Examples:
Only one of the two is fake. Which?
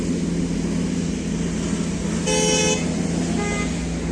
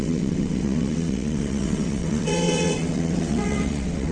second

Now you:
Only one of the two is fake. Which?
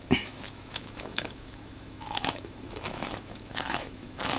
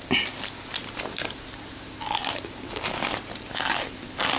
first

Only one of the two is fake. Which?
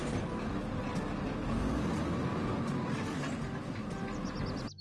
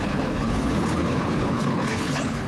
second